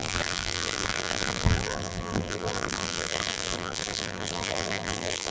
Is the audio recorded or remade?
remade